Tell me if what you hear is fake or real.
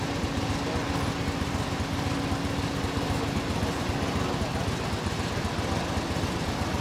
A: real